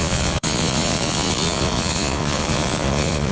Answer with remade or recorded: remade